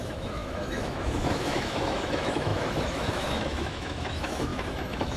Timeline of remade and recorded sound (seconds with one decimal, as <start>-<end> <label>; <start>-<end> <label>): 0.0-5.2 remade